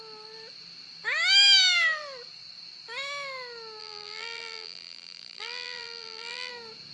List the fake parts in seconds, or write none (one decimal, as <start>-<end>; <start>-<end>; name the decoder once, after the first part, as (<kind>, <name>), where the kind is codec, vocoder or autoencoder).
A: 3.8-6.5 (vocoder, BigVGAN v2)